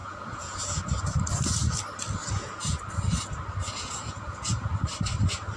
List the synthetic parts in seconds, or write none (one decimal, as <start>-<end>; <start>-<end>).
0.0-0.8; 2.2-2.8; 3.6-4.7